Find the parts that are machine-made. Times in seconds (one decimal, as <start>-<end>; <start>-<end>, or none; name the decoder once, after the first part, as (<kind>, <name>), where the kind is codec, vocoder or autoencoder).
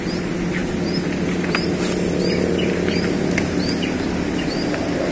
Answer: none